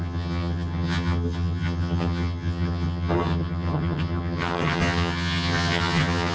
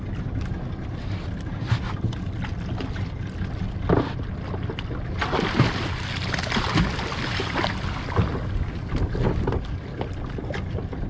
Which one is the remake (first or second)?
first